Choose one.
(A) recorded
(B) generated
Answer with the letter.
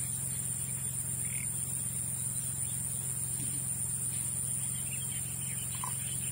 A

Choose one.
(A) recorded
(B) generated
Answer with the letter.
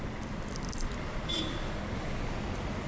A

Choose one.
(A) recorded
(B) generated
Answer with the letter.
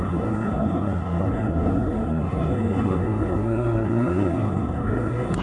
B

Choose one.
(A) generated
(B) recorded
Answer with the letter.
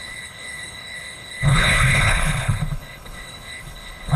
A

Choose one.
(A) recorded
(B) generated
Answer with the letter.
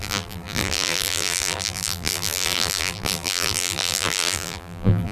B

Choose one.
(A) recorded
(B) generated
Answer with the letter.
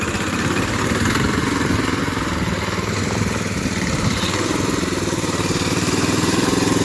B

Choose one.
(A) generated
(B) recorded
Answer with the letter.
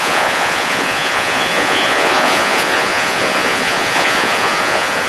A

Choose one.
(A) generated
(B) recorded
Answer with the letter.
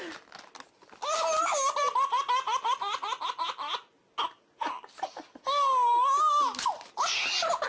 B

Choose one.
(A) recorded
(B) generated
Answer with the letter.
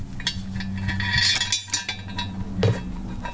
A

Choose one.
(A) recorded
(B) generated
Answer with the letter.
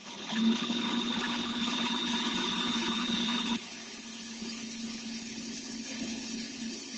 B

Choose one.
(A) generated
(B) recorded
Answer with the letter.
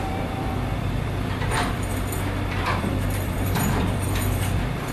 A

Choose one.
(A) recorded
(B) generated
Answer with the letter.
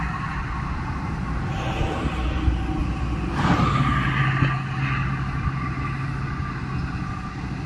A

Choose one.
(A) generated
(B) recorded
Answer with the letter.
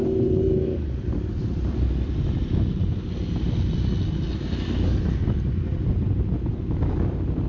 B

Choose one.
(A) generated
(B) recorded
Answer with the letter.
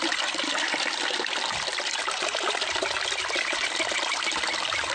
A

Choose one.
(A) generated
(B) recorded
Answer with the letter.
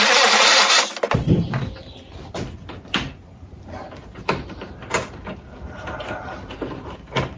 B